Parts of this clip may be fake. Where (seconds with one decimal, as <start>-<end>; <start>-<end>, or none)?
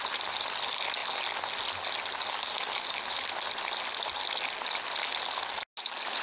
none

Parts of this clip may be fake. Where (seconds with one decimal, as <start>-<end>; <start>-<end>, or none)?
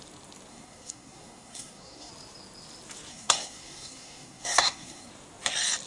0.5-2.1; 3.1-5.1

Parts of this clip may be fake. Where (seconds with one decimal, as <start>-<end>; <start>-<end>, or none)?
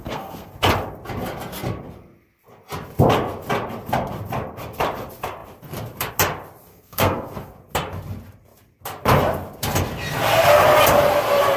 0.0-0.5; 6.7-7.5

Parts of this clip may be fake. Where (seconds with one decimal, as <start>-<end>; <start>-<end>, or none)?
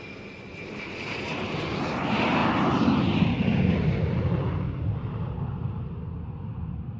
0.5-1.7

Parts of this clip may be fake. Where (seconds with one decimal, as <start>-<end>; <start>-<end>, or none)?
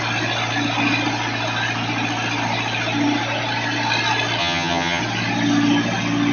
4.4-5.0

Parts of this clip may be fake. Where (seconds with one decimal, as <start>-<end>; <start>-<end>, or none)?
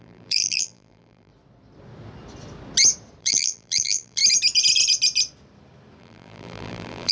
0.0-1.3; 3.2-4.2; 6.0-7.1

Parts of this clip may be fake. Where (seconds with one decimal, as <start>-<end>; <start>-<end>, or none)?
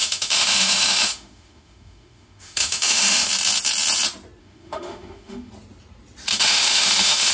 0.0-3.3; 4.4-5.5; 6.3-7.3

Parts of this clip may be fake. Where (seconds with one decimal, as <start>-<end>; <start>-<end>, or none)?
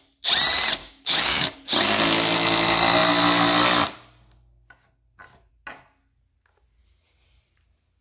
0.8-1.5